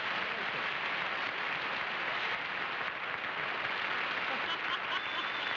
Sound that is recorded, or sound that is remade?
recorded